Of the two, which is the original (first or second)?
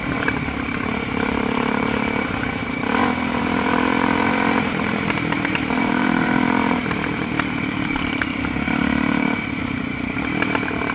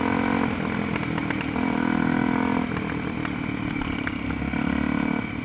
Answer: second